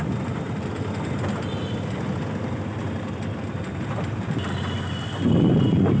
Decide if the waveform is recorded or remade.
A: recorded